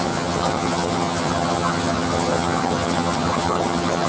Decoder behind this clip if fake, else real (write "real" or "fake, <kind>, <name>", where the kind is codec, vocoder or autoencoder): fake, vocoder, HiFi-GAN